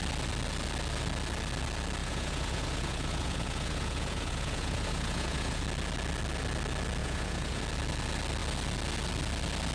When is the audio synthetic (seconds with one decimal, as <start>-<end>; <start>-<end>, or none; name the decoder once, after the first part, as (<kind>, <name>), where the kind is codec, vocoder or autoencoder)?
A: 2.0-5.6 (vocoder, Vocos); 7.0-7.6